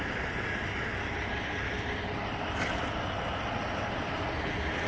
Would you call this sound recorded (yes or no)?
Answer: yes